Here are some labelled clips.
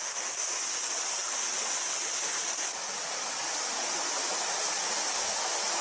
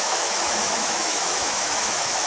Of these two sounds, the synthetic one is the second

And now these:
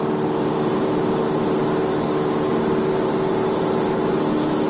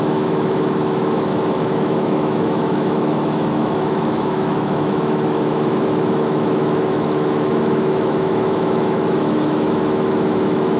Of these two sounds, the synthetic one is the second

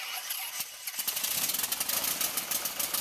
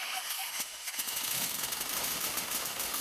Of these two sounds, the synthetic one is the second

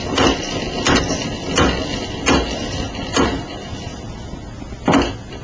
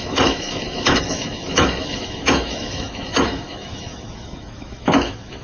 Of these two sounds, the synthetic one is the second